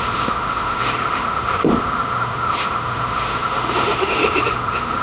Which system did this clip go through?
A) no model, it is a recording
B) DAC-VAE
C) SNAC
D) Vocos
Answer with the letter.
B